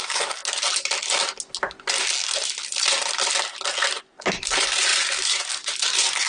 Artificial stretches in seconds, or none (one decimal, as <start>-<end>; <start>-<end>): 0.0-0.4; 4.2-6.3